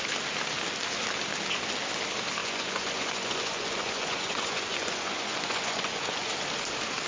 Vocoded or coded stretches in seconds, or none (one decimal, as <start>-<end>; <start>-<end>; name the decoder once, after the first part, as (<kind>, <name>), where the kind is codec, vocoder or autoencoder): 2.4-6.3 (vocoder, Vocos)